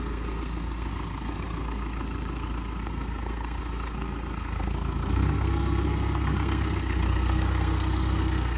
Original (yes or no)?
no